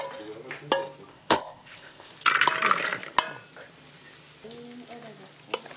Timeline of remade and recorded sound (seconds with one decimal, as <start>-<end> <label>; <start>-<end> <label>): 0.0-1.1 recorded; 1.1-2.1 remade; 2.1-5.8 recorded